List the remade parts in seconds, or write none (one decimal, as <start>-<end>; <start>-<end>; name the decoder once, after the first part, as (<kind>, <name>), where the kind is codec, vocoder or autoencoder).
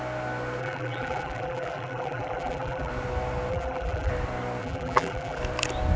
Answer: 0.6-2.9 (vocoder, BigVGAN v2); 3.5-4.1; 4.6-5.4